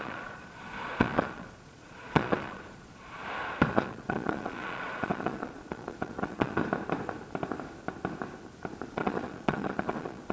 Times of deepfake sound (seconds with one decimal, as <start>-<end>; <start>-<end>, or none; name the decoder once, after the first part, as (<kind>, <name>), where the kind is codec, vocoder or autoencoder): 0.0-3.2 (vocoder, Vocos); 3.7-6.6; 8.9-10.3

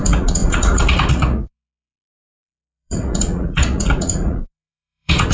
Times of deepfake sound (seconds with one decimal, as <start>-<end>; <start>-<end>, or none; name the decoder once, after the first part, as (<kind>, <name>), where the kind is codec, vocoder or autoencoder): 0.0-5.3 (vocoder, Vocos)

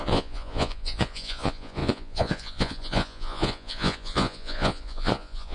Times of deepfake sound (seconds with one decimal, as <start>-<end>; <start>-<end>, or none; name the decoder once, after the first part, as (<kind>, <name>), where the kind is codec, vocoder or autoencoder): 0.0-5.5 (vocoder, Vocos)

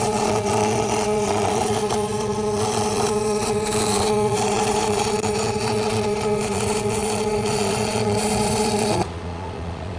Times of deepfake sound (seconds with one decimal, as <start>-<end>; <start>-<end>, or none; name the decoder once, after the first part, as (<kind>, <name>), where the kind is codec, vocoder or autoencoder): 0.0-10.0 (vocoder, Vocos)

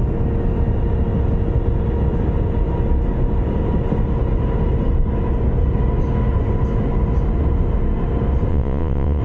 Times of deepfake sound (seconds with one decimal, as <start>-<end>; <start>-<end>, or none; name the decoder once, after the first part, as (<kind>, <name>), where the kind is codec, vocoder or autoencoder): 8.5-9.2 (vocoder, Vocos)

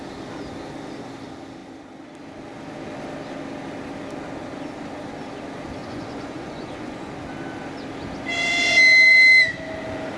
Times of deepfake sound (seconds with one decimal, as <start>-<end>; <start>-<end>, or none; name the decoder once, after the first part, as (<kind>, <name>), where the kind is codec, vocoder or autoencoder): 5.8-7.1 (vocoder, Vocos)